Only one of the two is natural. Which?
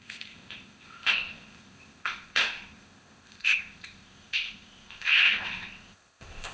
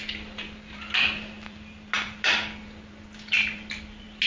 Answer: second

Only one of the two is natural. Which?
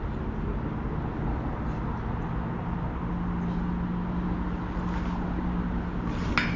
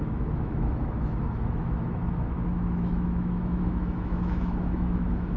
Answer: first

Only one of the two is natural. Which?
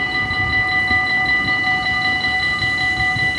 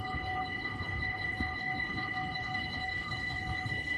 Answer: first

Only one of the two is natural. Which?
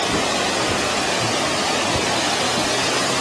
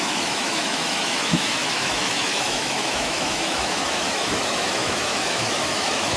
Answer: first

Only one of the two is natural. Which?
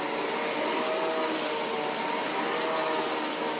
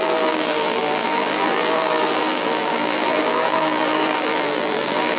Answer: first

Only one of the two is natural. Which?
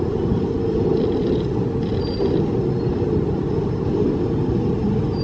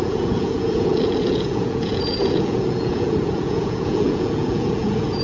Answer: first